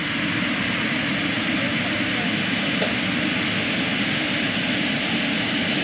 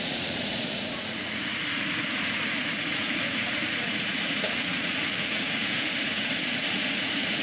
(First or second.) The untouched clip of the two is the first